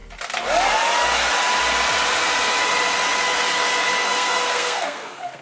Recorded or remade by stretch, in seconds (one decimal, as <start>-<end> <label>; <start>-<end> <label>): 0.0-4.0 recorded; 4.0-5.4 remade